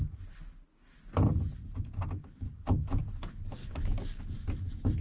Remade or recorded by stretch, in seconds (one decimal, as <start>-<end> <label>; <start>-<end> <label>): 0.0-3.6 recorded; 3.6-4.2 remade; 4.2-5.0 recorded